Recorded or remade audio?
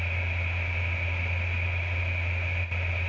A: recorded